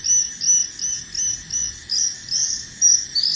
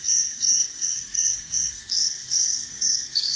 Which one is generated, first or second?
second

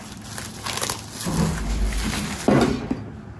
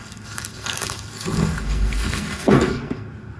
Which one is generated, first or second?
second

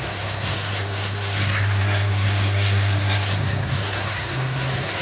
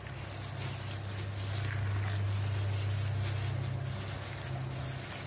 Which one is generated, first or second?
first